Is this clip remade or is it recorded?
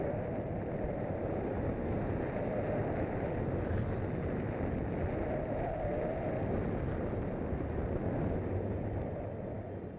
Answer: recorded